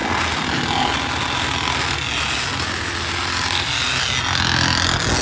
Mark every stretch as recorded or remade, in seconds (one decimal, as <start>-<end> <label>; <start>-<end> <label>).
0.0-5.2 recorded